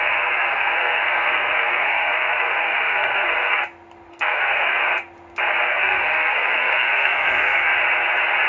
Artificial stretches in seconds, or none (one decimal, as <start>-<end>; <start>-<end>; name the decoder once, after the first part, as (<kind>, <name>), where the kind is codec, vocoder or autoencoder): 0.0-3.6 (codec, SNAC); 4.1-4.8; 5.6-7.7